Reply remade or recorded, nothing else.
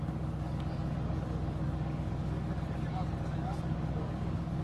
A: remade